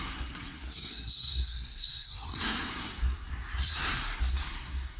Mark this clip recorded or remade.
remade